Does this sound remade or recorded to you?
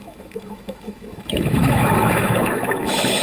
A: remade